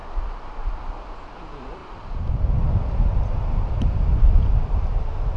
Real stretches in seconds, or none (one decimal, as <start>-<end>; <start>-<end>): 0.0-1.4; 1.8-5.0